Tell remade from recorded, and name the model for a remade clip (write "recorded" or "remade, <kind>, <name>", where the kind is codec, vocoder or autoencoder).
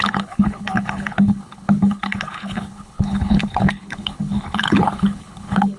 remade, codec, HILCodec